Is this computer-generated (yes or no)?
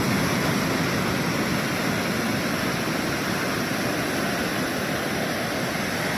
no